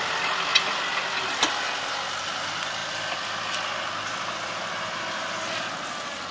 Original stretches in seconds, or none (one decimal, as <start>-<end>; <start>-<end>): 0.0-6.3